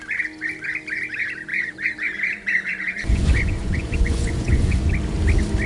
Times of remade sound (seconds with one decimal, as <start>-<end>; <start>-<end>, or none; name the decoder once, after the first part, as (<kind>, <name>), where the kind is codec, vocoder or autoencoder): 1.5-4.9 (vocoder, Vocos)